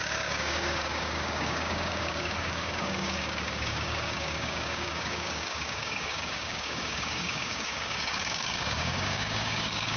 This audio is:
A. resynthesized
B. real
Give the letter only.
A